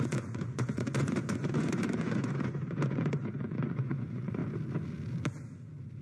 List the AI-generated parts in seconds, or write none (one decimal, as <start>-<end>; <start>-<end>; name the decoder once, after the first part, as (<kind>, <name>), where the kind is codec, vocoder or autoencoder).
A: 0.0-4.4 (vocoder, Vocos)